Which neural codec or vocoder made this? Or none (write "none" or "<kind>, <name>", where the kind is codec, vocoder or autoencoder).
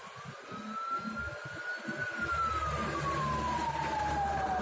none